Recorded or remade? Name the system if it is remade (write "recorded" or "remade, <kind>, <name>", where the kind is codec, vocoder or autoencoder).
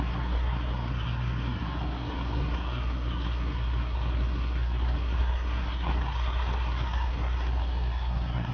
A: remade, codec, SNAC